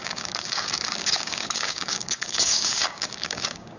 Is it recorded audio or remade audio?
remade